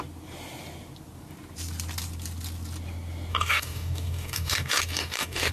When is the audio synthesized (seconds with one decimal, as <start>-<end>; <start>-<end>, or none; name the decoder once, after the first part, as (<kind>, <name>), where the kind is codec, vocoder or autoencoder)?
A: 3.3-5.5 (codec, DAC)